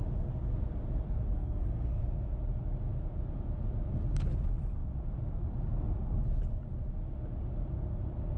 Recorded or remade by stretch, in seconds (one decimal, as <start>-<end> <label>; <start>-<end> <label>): 0.0-1.3 recorded; 1.3-2.0 remade; 2.0-8.4 recorded